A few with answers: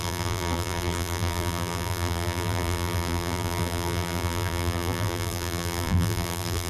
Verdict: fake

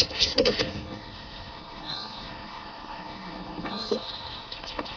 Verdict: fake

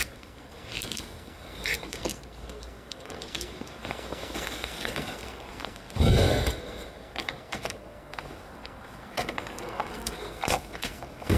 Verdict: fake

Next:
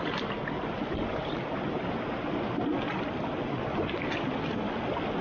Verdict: real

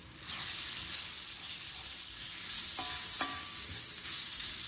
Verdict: real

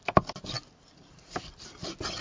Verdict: real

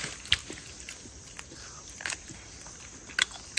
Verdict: real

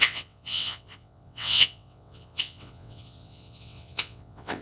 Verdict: fake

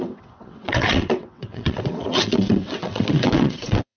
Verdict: fake